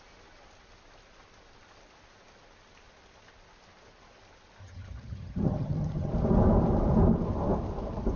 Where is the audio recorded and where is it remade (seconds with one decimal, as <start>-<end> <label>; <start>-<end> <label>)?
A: 0.0-4.6 recorded; 4.6-6.1 remade; 6.1-8.2 recorded